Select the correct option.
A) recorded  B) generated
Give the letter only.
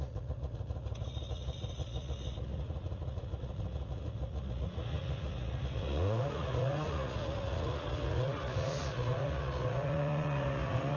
B